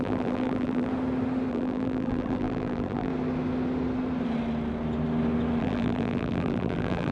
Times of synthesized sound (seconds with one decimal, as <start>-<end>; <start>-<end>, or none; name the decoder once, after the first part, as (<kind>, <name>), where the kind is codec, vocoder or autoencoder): 0.0-0.9 (vocoder, BigVGAN v2); 1.5-3.1; 5.6-7.1